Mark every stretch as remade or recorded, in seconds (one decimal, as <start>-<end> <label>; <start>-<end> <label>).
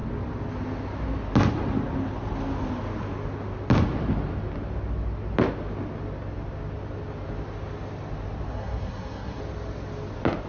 0.0-8.5 recorded; 8.5-9.4 remade; 9.4-10.5 recorded